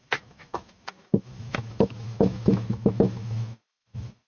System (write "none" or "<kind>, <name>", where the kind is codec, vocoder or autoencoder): autoencoder, DAC-VAE